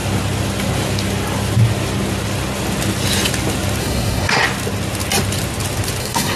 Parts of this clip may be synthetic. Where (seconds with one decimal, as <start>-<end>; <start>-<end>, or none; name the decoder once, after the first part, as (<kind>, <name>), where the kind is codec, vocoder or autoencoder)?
3.8-4.4 (codec, SNAC); 6.0-6.4